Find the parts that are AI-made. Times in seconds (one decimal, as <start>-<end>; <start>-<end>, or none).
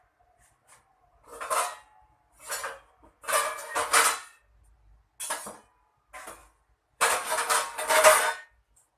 6.4-8.0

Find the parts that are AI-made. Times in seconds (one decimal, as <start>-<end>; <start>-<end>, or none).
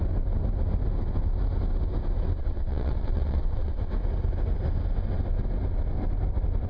2.4-3.8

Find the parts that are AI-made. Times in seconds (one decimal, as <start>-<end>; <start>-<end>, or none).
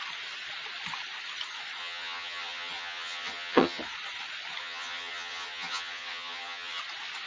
1.8-3.8; 4.6-6.8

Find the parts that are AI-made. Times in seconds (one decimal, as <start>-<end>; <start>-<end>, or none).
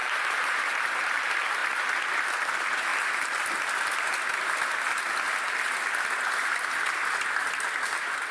0.0-0.8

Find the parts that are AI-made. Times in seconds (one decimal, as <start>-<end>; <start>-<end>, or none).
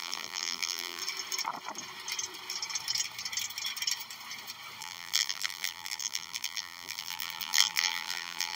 0.0-1.0; 4.8-8.6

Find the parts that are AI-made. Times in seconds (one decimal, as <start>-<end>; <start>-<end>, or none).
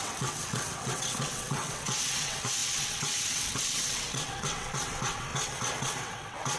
0.0-6.6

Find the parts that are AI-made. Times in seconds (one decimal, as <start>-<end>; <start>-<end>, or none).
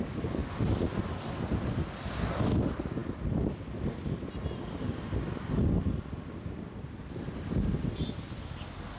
none